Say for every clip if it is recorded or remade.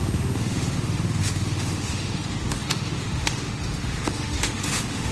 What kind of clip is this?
remade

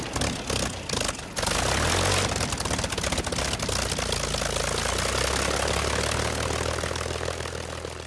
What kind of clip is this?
recorded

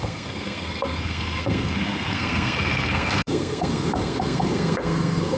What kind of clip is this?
remade